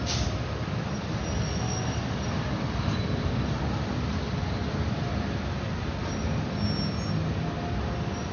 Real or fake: real